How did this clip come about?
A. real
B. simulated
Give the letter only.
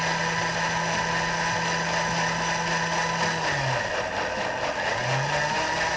A